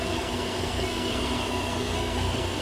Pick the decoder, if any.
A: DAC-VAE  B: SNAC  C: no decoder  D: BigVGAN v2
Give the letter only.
B